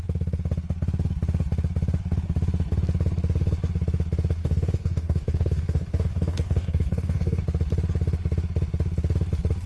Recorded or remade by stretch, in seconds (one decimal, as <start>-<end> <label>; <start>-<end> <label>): 0.0-4.4 recorded; 4.4-7.4 remade; 7.4-9.7 recorded